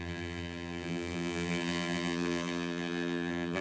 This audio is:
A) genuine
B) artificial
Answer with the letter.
B